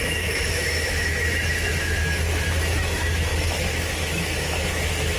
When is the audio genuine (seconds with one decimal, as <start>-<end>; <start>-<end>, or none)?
none